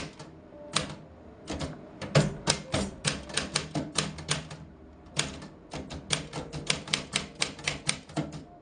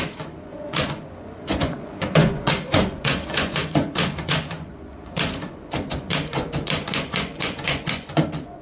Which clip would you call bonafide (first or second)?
first